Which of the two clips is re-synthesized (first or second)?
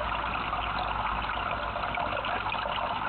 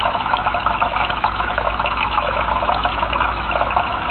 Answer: second